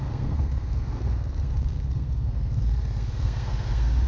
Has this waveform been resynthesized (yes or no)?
yes